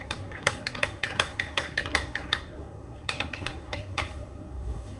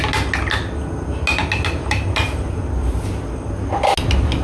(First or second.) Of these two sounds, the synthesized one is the first